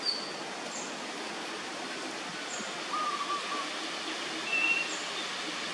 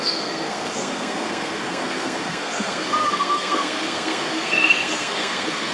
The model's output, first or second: second